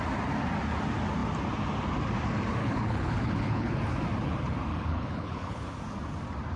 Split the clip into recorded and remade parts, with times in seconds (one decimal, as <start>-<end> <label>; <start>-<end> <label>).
0.0-2.6 recorded; 2.6-3.8 remade; 3.8-4.7 recorded; 4.7-5.8 remade; 5.8-6.6 recorded